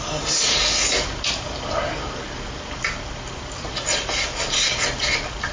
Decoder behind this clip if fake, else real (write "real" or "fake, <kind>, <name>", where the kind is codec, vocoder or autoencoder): real